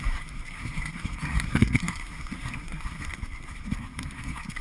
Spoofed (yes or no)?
yes